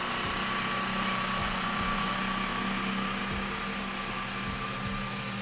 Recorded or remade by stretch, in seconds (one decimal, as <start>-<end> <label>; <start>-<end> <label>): 0.0-1.4 recorded; 1.4-2.1 remade; 2.1-5.4 recorded